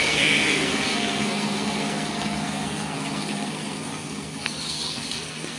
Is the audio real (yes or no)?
no